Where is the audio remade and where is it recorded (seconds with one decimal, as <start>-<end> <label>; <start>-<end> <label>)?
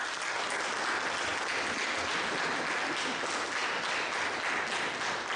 0.0-5.4 recorded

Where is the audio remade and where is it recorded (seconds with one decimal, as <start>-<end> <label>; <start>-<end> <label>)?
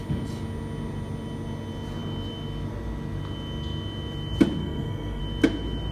0.0-4.6 recorded; 4.6-5.2 remade; 5.2-5.9 recorded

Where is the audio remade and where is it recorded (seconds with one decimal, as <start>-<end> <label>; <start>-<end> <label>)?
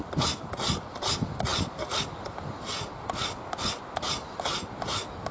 0.0-5.3 recorded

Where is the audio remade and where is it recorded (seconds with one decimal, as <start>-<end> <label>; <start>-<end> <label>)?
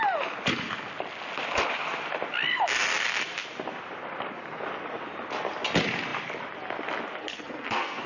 0.0-7.2 recorded; 7.2-8.1 remade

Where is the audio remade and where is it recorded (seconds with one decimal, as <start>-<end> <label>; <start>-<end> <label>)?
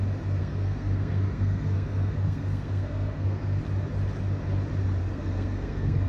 0.0-0.4 recorded; 0.4-3.6 remade; 3.6-5.0 recorded; 5.0-6.1 remade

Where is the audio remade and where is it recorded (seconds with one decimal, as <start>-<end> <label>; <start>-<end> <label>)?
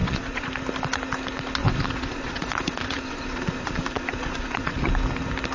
0.0-0.5 remade; 0.5-1.6 recorded; 1.6-4.9 remade; 4.9-5.5 recorded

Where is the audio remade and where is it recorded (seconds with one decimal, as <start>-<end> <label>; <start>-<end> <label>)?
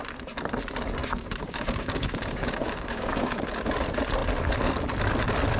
0.0-1.0 recorded; 1.0-3.4 remade; 3.4-5.6 recorded